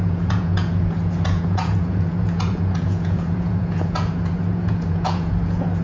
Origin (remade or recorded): remade